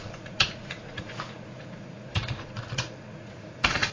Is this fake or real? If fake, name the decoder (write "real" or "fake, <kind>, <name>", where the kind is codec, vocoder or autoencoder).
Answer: fake, vocoder, Vocos